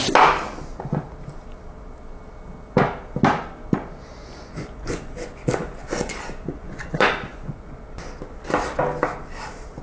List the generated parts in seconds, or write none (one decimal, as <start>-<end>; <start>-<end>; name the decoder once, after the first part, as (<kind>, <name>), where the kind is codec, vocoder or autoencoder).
4.1-7.8 (vocoder, Vocos)